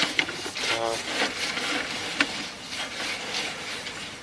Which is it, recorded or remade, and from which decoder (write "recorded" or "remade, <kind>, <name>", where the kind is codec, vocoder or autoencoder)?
recorded